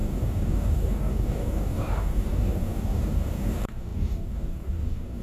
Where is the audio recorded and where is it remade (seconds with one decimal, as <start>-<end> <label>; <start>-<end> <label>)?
0.0-5.2 remade